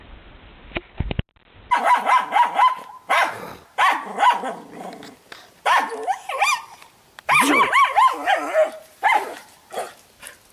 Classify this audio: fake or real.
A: real